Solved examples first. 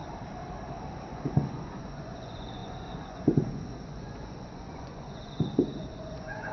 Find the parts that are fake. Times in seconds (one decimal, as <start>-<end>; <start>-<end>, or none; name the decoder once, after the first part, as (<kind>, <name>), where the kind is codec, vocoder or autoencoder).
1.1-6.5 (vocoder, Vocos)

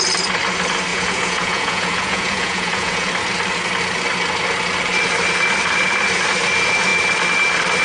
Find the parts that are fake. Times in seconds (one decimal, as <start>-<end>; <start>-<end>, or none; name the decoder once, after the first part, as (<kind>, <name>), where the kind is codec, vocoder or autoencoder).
0.9-3.1 (vocoder, Vocos)

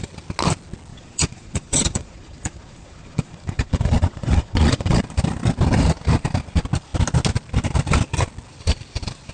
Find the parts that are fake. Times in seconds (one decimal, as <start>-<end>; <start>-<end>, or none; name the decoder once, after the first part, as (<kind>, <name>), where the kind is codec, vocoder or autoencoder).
0.9-5.0 (vocoder, Vocos)